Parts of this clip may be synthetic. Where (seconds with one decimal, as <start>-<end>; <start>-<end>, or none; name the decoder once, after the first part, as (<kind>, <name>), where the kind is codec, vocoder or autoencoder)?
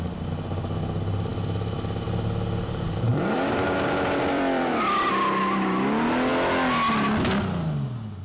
3.1-5.1 (vocoder, BigVGAN v2)